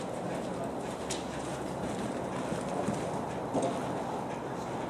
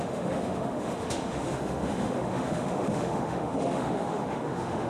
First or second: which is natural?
first